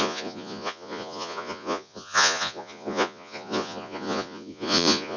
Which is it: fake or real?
fake